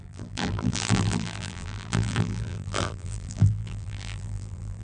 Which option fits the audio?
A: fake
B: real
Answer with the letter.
A